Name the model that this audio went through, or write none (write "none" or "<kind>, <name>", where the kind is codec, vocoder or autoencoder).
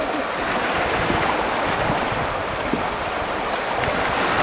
none